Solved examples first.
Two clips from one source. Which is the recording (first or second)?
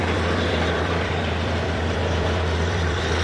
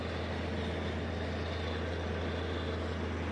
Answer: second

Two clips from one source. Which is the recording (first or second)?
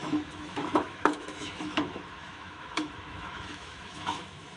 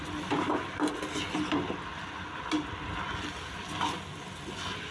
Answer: second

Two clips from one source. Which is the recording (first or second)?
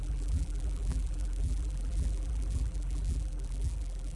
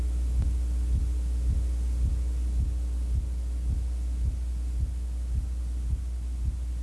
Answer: second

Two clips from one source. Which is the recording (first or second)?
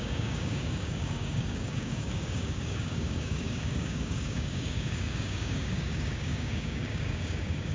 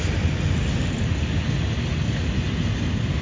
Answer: second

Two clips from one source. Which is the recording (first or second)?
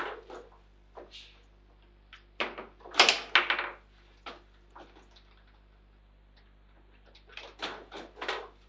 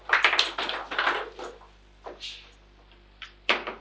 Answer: first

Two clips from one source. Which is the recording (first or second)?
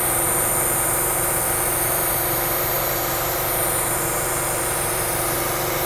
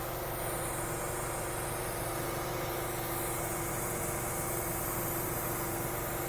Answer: second